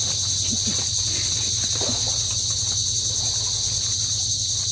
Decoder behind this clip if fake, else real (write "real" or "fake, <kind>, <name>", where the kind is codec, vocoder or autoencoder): real